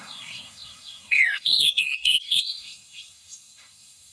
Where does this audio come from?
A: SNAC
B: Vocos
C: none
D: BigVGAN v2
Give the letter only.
A